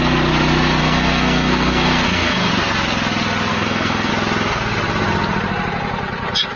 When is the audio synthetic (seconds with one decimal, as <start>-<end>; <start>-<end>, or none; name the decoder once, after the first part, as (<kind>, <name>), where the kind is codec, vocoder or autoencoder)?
0.8-2.5 (codec, SNAC); 3.5-4.1